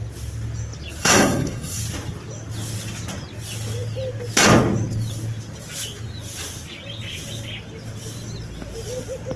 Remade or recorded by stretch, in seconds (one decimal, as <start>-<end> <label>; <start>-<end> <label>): 0.0-1.0 recorded; 1.0-1.8 remade; 1.8-9.4 recorded